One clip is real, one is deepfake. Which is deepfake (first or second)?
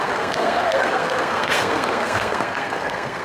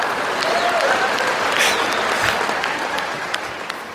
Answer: first